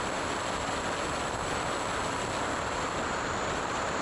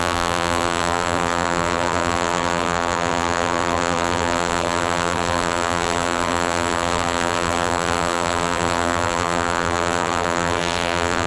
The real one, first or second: first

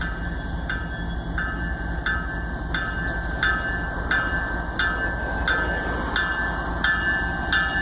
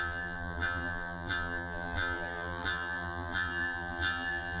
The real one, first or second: first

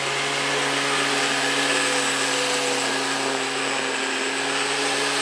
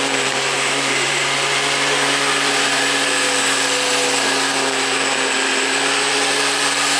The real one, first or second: first